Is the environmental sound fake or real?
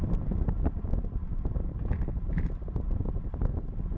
fake